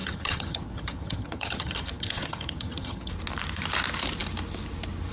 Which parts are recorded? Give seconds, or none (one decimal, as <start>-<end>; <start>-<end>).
3.1-5.1